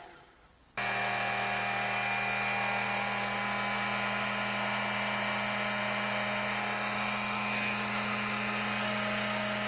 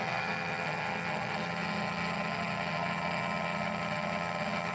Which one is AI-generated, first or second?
second